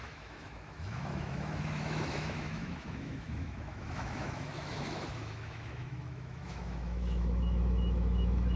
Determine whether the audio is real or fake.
fake